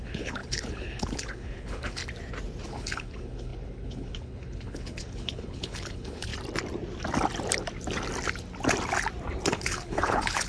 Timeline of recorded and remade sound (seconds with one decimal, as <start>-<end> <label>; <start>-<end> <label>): 0.0-2.0 remade; 2.0-2.7 recorded; 2.7-6.3 remade; 6.3-9.5 recorded; 9.5-10.5 remade